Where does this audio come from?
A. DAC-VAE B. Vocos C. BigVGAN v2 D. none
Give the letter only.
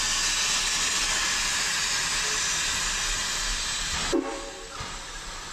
D